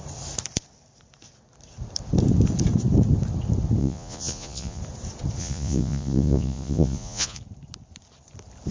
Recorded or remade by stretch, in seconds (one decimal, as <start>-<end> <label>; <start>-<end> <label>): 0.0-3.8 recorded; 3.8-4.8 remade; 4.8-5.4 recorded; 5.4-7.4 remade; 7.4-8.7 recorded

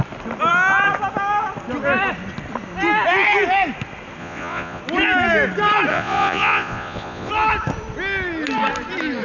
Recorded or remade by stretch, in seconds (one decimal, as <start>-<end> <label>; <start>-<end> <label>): 0.0-4.2 recorded; 4.2-4.8 remade; 4.8-5.9 recorded; 5.9-7.3 remade; 7.3-9.2 recorded

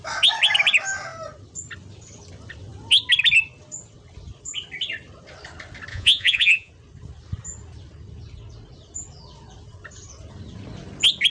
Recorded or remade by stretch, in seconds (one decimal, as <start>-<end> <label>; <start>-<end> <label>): 0.0-5.9 recorded; 5.9-6.7 remade; 6.7-11.3 recorded

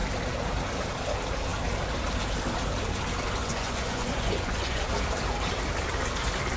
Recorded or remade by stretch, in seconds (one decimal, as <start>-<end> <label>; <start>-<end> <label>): 0.0-3.4 recorded; 3.4-4.8 remade; 4.8-6.6 recorded

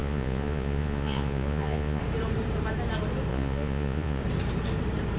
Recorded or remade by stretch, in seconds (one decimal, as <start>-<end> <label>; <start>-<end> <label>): 0.0-2.0 remade; 2.0-3.3 recorded; 3.3-4.2 remade; 4.2-5.2 recorded

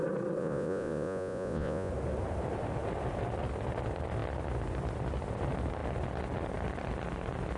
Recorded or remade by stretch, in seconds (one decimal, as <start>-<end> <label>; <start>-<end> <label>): 0.0-0.4 recorded; 0.4-1.9 remade; 1.9-7.6 recorded

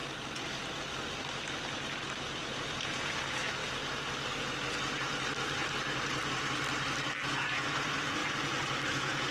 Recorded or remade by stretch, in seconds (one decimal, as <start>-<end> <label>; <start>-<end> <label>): 0.0-2.2 recorded; 2.2-3.6 remade; 3.6-7.3 recorded; 7.3-8.2 remade; 8.2-8.9 recorded; 8.9-9.3 remade